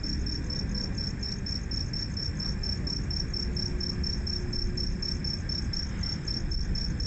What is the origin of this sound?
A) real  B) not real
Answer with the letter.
A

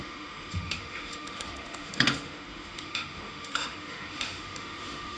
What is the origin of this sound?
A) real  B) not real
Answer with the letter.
B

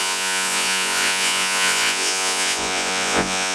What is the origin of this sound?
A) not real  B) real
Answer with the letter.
A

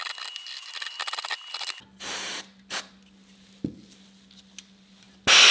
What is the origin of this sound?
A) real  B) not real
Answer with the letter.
A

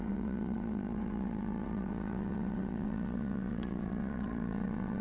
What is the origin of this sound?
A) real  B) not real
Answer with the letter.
B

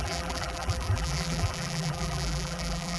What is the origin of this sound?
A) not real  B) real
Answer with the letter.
A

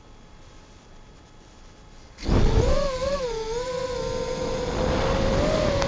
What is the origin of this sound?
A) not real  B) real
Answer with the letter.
B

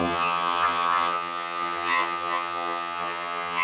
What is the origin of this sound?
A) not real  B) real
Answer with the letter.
A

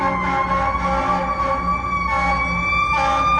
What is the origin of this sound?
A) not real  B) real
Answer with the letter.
B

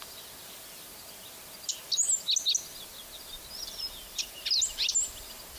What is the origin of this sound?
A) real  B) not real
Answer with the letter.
A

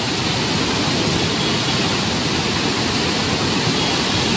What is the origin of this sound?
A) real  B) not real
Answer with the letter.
A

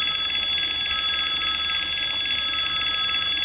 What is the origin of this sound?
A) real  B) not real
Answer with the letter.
A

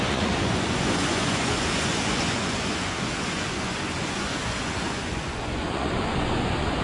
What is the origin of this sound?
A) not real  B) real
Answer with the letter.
A